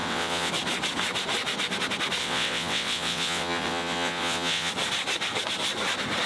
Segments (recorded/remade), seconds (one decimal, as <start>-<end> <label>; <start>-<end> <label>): 0.0-0.5 remade; 0.5-2.2 recorded; 2.2-4.7 remade; 4.7-6.3 recorded

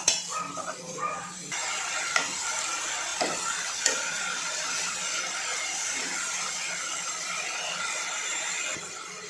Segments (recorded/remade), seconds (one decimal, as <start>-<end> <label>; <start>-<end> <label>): 0.0-9.3 remade

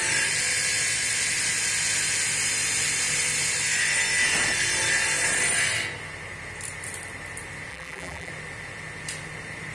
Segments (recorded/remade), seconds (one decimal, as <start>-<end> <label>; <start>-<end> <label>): 0.0-7.7 recorded; 7.7-8.3 remade; 8.3-9.7 recorded

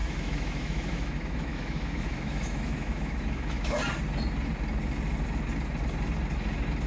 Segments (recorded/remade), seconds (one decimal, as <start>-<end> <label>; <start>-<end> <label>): 0.0-3.8 remade; 3.8-6.9 recorded

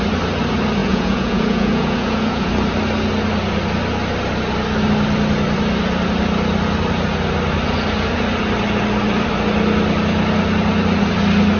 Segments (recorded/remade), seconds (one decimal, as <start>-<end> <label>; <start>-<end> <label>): 0.0-0.8 recorded; 0.8-2.5 remade; 2.5-11.6 recorded

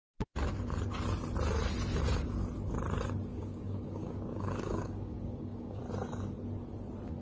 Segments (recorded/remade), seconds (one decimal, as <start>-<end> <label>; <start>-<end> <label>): 0.0-3.3 recorded; 3.3-5.8 remade; 5.8-7.2 recorded

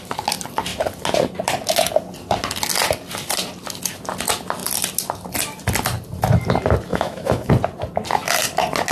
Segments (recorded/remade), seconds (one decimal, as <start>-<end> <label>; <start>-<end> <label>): 0.0-6.9 recorded; 6.9-7.5 remade; 7.5-8.9 recorded

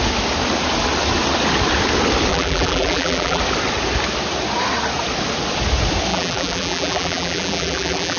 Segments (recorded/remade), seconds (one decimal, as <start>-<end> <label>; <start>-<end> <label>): 0.0-2.3 recorded; 2.3-3.4 remade; 3.4-6.1 recorded; 6.1-8.2 remade